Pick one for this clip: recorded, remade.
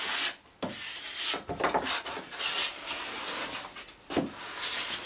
recorded